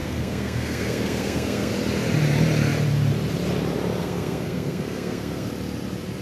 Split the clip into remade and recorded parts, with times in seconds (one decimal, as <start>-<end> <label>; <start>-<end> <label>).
0.0-1.7 remade; 1.7-4.0 recorded; 4.0-5.5 remade; 5.5-6.2 recorded